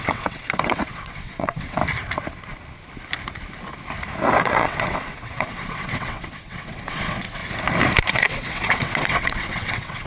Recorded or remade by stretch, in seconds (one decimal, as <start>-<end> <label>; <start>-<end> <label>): 0.0-1.8 remade; 1.8-4.4 recorded; 4.4-7.4 remade; 7.4-8.1 recorded; 8.1-10.1 remade